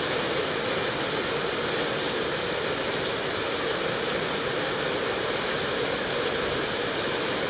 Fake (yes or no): no